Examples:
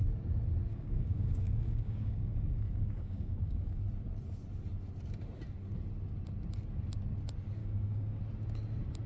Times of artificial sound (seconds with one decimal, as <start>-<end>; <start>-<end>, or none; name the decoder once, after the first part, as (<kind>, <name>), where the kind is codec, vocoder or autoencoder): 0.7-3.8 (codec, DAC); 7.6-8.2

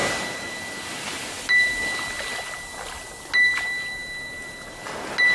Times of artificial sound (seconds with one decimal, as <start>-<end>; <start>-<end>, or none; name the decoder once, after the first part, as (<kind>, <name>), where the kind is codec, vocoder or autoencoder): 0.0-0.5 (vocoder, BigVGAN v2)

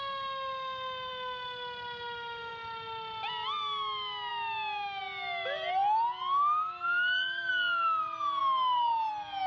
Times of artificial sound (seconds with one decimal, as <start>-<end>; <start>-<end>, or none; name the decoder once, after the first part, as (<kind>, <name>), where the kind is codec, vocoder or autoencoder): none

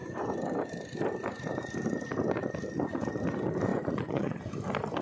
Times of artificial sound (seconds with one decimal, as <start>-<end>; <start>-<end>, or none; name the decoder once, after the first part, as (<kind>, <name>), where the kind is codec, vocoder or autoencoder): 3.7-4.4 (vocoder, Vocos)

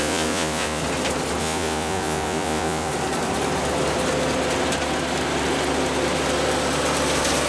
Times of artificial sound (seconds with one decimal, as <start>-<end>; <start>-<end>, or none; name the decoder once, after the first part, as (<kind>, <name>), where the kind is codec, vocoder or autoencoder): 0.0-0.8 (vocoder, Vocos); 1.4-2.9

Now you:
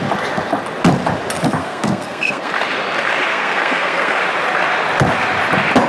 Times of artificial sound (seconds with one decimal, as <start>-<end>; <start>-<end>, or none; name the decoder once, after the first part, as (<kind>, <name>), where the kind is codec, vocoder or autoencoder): 1.6-2.5 (codec, SNAC); 3.3-4.2

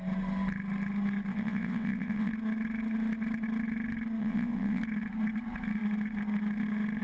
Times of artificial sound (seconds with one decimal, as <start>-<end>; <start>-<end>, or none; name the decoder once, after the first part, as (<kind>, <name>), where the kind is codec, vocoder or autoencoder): 1.3-2.3 (vocoder, WaveNeXt); 4.2-4.8

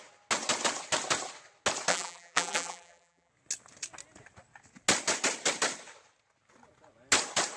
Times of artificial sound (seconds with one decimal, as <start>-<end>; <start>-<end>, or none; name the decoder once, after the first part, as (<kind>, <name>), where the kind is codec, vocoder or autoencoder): 1.9-3.3 (vocoder, BigVGAN v2)